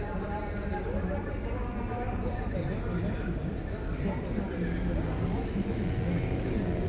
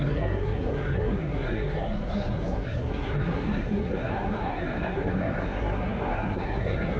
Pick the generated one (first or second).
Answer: second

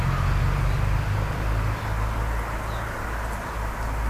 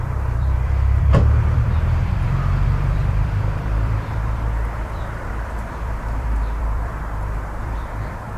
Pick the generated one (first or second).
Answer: second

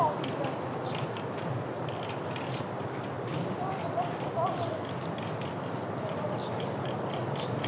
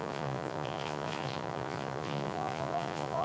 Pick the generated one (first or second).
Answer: second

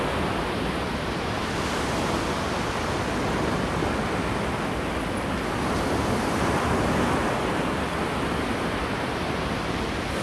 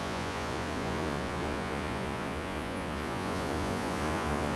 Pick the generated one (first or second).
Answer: second